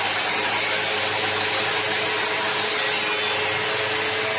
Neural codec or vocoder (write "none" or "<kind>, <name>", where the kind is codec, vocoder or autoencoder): none